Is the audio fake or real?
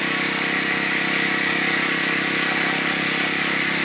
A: fake